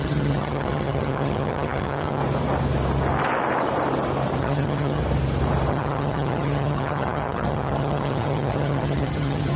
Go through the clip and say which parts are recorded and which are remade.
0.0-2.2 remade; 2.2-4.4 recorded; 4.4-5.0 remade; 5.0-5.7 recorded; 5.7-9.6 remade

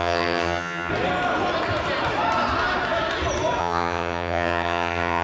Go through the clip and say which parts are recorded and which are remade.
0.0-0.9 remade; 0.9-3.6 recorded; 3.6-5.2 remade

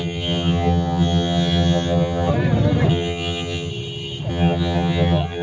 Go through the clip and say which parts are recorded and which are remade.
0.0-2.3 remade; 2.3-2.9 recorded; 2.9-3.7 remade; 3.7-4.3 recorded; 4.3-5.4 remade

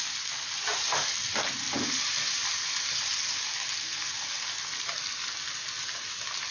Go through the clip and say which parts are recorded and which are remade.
0.0-6.5 recorded

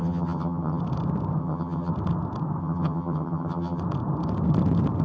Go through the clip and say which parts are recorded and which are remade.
0.0-0.8 remade; 0.8-1.4 recorded; 1.4-1.9 remade; 1.9-2.6 recorded; 2.6-3.8 remade; 3.8-5.0 recorded

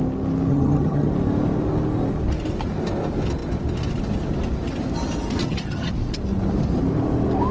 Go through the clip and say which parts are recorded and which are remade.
0.0-0.5 recorded; 0.5-1.1 remade; 1.1-5.4 recorded; 5.4-5.9 remade; 5.9-7.5 recorded